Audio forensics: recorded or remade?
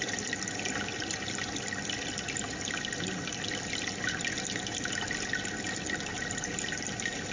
recorded